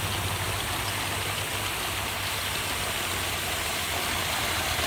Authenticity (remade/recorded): recorded